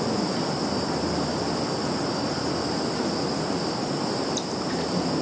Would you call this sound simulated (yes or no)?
no